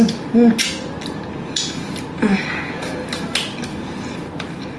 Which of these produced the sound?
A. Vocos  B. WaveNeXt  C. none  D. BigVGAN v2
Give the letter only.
C